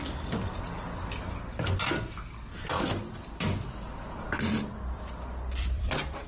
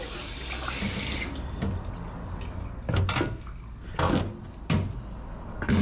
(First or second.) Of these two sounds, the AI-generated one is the first